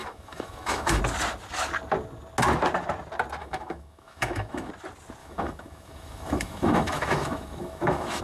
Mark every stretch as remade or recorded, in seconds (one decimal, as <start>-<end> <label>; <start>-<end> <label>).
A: 0.0-1.0 remade; 1.0-3.4 recorded; 3.4-4.7 remade; 4.7-5.2 recorded; 5.2-8.2 remade